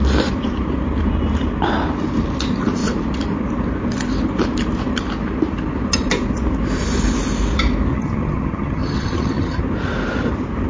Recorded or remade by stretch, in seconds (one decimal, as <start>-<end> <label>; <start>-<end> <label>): 0.0-7.9 recorded; 7.9-9.6 remade; 9.6-10.7 recorded